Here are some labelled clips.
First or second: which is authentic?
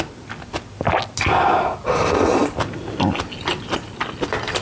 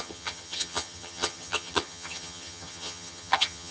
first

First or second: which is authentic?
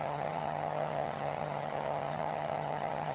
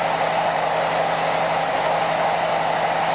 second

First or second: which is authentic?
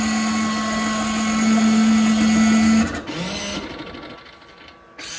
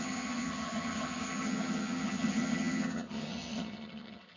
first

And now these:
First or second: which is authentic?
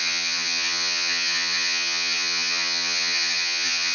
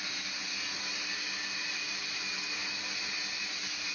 second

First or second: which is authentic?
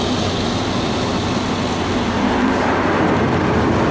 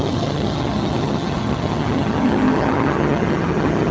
first